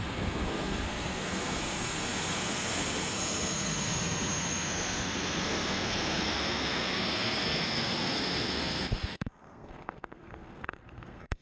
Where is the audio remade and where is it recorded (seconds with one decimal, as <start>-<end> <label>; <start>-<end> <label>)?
0.0-11.4 remade